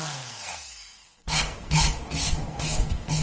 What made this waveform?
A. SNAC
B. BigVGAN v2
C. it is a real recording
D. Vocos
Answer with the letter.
A